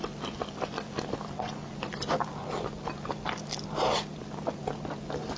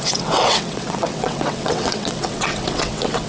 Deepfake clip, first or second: second